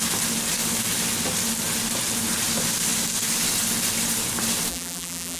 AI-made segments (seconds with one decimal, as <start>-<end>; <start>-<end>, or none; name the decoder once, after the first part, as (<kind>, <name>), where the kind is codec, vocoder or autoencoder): 4.7-5.4 (vocoder, BigVGAN v2)